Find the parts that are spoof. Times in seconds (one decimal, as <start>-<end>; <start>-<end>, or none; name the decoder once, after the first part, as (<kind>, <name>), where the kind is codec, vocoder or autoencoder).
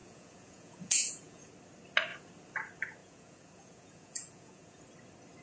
0.0-1.5 (vocoder, Vocos); 3.0-4.8